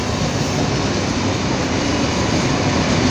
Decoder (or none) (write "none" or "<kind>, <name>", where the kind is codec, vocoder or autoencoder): none